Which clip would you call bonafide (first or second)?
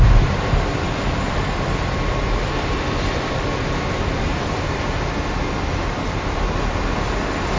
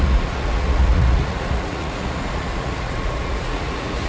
first